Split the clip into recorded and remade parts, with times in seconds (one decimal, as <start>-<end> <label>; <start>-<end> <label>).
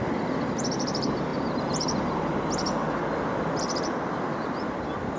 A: 0.0-5.2 recorded